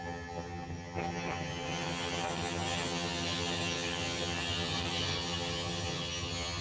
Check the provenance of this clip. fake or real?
fake